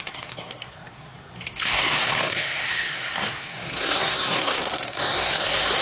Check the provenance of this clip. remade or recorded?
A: remade